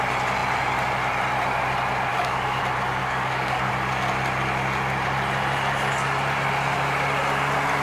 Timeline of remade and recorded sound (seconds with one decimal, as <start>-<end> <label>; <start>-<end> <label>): 0.0-2.1 recorded; 2.1-2.6 remade; 2.6-3.0 recorded; 3.0-3.7 remade; 3.7-7.8 recorded